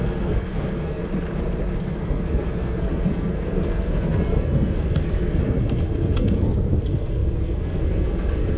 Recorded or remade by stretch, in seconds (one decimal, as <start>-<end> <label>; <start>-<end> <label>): 0.0-1.0 remade; 1.0-1.8 recorded; 1.8-8.6 remade